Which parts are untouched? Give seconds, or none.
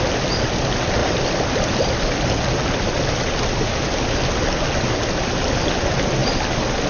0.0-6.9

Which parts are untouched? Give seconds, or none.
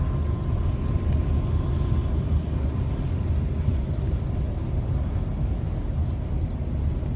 0.0-7.2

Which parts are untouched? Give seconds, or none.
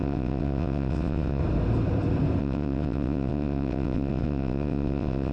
1.4-2.4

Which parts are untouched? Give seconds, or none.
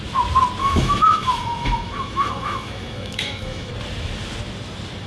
0.0-0.6; 3.7-5.1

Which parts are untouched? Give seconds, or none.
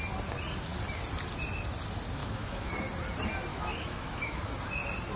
0.0-2.2; 2.7-3.5; 4.4-5.2